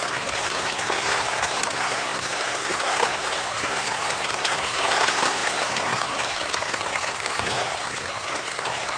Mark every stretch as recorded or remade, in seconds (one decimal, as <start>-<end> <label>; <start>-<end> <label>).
0.0-9.0 remade